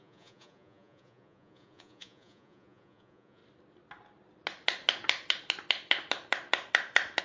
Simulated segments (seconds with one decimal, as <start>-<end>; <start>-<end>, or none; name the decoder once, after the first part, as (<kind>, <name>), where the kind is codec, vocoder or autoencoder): 0.0-3.4 (vocoder, Vocos)